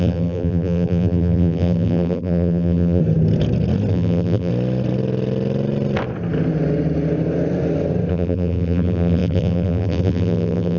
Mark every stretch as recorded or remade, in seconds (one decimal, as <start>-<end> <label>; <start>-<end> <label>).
0.0-3.0 remade; 3.0-3.9 recorded; 3.9-4.5 remade; 4.5-8.1 recorded; 8.1-10.8 remade